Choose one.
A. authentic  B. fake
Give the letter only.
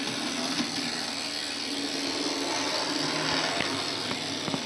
A